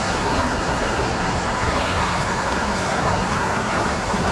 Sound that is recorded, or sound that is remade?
remade